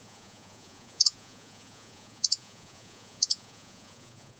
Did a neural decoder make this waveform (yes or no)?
yes